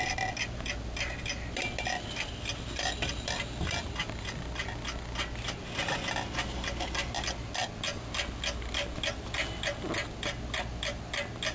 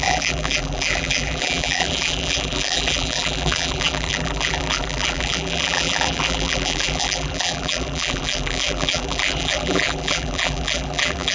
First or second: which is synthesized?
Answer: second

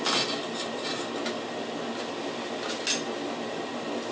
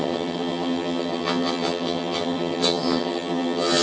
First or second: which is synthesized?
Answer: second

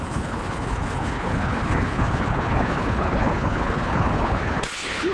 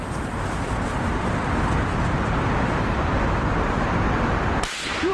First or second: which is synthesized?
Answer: first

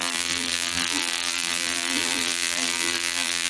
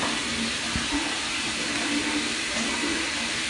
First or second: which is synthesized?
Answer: first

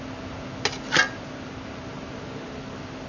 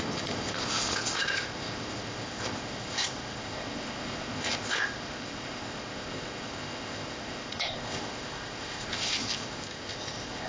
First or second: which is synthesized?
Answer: second